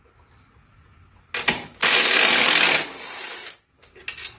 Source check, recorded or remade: recorded